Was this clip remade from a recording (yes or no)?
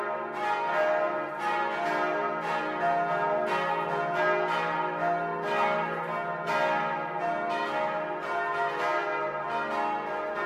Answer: no